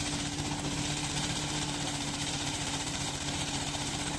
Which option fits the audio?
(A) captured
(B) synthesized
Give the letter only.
B